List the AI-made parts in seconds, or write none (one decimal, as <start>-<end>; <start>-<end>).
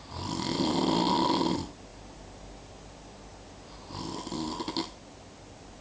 none